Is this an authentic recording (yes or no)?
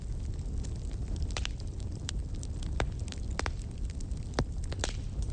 no